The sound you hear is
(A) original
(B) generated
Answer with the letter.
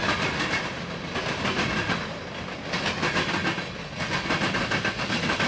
B